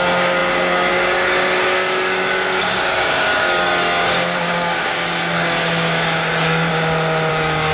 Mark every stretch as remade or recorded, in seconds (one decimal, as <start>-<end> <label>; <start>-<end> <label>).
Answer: 0.0-6.7 remade; 6.7-7.3 recorded; 7.3-7.7 remade